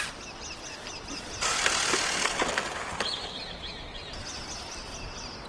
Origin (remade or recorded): recorded